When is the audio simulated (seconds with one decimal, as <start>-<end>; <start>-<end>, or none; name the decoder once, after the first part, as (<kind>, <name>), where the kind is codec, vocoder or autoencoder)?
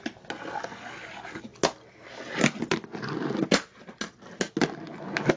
none